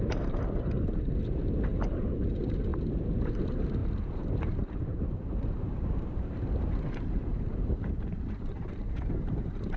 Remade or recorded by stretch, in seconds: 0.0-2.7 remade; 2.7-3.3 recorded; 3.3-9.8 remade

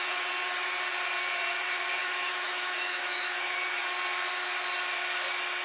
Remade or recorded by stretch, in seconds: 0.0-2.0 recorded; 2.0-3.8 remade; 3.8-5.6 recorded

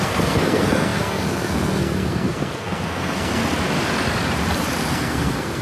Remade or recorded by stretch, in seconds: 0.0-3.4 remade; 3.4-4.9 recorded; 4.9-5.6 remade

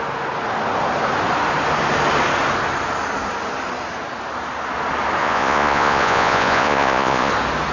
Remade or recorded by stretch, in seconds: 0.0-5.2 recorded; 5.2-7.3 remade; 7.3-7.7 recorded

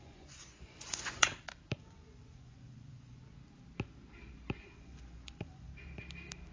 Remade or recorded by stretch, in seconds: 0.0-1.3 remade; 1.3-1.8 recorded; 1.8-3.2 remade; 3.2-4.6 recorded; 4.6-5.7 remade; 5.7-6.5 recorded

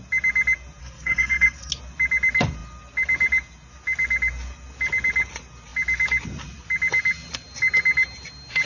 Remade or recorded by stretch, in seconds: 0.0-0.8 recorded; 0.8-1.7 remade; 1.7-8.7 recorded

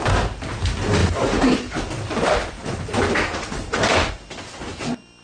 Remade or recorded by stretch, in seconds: 0.0-5.2 recorded